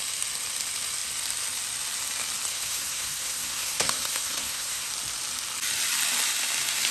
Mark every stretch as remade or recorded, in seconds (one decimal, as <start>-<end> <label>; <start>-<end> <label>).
0.0-2.5 recorded; 2.5-4.9 remade; 4.9-6.9 recorded